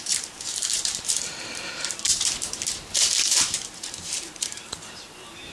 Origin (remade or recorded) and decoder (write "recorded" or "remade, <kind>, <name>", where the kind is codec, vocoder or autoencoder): remade, vocoder, BigVGAN v2